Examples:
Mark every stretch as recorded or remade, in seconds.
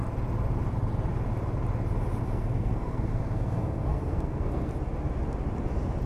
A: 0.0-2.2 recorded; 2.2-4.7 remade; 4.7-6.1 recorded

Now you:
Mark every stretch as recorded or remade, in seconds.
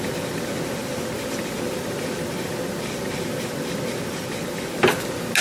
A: 0.0-5.4 recorded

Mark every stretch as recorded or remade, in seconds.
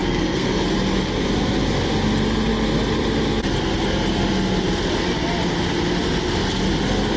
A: 0.0-0.6 remade; 0.6-7.2 recorded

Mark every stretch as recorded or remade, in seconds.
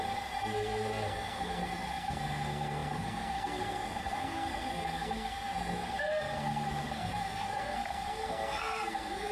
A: 0.0-9.3 remade